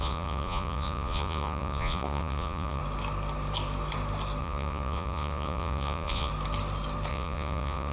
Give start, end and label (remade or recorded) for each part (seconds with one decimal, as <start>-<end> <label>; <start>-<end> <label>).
0.0-2.8 remade; 2.8-4.4 recorded; 4.4-6.3 remade; 6.3-7.1 recorded; 7.1-7.9 remade